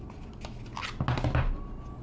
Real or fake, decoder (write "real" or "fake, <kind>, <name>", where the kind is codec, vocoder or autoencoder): real